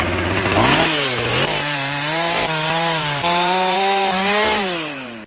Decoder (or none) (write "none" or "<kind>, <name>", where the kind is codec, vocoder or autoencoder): vocoder, BigVGAN v2